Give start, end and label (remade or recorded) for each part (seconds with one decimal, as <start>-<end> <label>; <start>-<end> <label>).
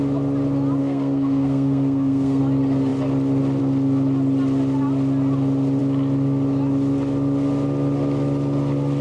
0.0-0.8 recorded; 0.8-2.4 remade; 2.4-9.0 recorded